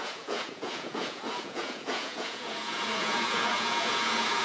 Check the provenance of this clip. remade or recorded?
remade